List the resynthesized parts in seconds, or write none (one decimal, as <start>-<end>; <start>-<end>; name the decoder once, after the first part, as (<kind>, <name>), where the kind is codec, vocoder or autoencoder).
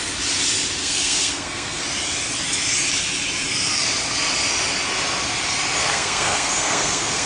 0.8-1.8 (codec, SNAC); 5.8-7.3